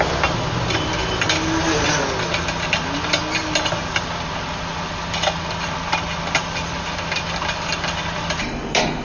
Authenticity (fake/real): real